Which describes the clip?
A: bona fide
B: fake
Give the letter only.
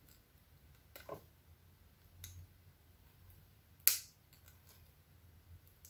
A